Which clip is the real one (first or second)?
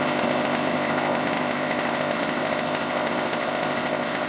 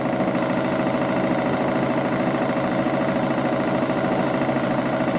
second